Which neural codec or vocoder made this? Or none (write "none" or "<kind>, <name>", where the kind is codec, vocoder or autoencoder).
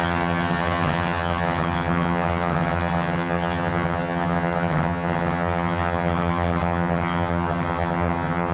vocoder, HiFi-GAN